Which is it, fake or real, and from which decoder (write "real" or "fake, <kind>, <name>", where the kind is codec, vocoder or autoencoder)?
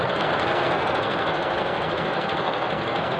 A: fake, codec, SNAC